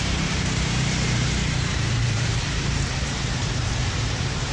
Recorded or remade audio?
remade